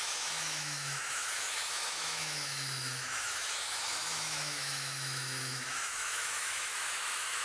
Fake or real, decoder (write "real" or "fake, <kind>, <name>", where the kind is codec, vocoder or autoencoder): fake, autoencoder, DAC-VAE